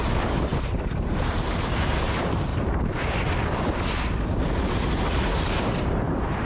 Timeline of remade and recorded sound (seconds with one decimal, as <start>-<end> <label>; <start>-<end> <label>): 0.0-2.5 remade; 2.5-5.6 recorded; 5.6-6.4 remade